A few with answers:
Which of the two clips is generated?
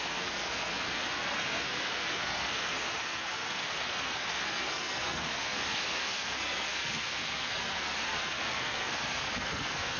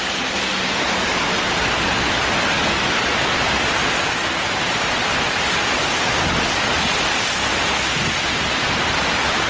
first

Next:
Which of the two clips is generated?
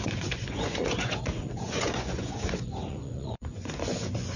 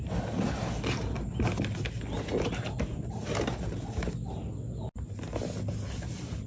first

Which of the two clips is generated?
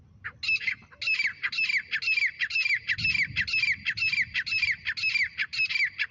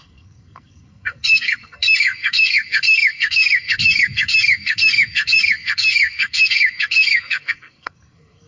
second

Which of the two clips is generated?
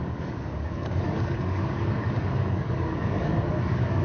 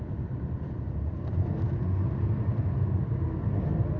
first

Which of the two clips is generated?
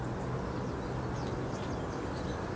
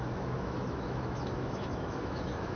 second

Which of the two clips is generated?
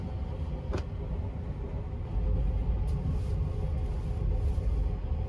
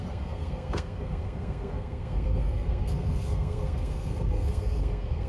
second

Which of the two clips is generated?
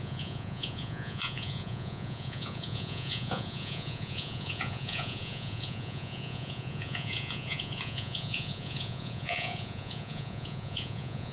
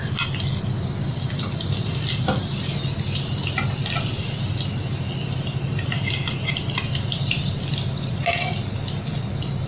first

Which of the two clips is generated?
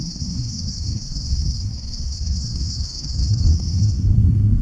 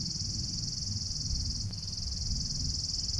first